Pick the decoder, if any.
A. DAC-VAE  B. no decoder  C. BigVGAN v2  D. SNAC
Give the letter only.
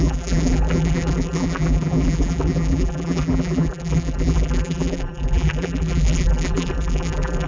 C